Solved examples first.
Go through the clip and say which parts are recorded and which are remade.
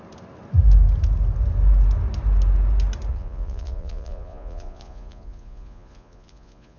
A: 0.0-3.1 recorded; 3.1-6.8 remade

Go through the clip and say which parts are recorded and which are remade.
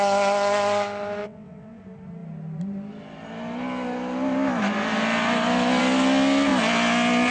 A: 0.0-1.2 recorded; 1.2-1.8 remade; 1.8-7.3 recorded